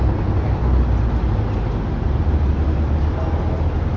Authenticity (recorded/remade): recorded